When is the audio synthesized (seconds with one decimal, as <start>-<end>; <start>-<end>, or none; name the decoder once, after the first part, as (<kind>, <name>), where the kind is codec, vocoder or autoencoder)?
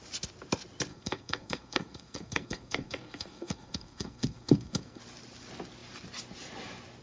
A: 0.9-5.0 (codec, SNAC)